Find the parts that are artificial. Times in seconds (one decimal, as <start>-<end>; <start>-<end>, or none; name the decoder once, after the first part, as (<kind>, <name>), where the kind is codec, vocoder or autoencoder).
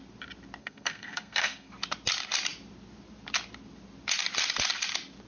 0.6-1.7 (codec, SNAC)